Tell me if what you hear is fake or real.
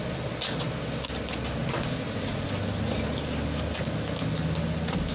real